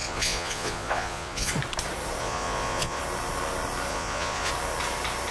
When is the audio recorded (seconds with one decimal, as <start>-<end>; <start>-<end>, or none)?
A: 1.5-2.2; 3.0-3.9; 4.5-5.3